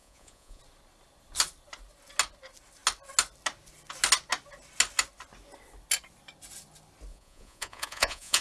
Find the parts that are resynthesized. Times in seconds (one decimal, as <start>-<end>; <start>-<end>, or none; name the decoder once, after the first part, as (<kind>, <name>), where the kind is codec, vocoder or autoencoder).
0.0-0.6 (vocoder, Vocos); 7.1-8.4